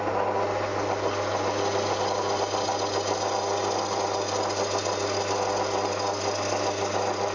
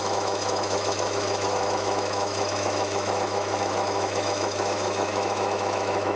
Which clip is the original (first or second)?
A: first